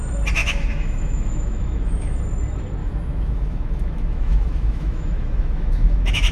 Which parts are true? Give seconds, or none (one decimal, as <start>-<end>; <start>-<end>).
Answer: 0.0-0.4; 2.2-2.8